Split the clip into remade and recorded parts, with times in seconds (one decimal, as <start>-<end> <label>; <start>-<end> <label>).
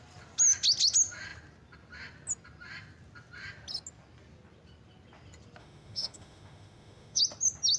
0.0-5.6 recorded; 5.6-7.2 remade; 7.2-7.8 recorded